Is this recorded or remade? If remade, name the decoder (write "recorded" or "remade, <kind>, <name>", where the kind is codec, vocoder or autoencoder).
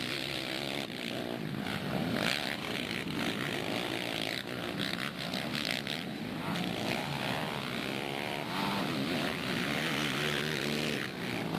recorded